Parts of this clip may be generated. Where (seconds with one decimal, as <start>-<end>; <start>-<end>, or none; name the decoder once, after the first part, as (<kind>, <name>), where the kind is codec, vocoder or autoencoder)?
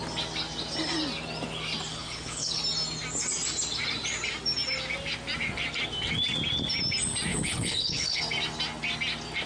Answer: 1.9-2.6 (codec, HILCodec); 7.3-8.2